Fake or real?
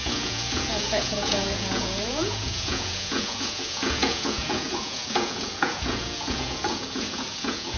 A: fake